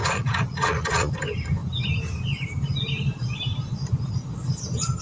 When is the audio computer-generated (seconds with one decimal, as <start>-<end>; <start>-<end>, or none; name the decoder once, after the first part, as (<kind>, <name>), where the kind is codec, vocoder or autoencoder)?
0.0-1.1 (vocoder, Vocos)